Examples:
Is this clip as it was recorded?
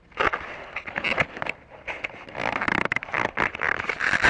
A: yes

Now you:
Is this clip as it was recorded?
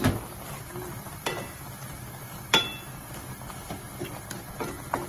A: yes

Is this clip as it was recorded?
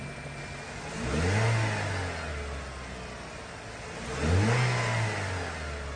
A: yes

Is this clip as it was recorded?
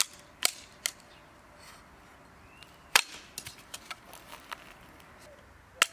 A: yes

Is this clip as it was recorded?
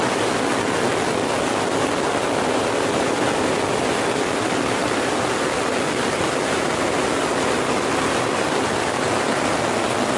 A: yes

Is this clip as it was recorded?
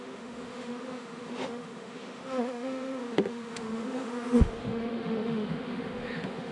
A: no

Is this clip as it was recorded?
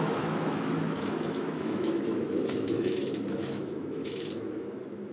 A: no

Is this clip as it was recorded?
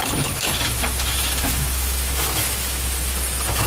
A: no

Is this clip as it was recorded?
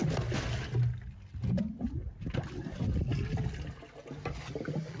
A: yes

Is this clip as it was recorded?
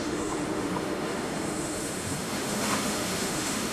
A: no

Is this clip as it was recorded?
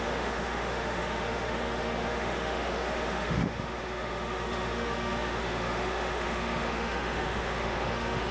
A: no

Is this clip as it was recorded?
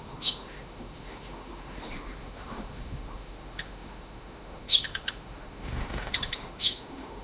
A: no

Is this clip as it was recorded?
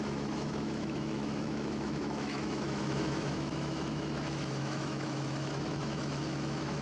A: no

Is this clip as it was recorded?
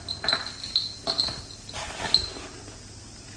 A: yes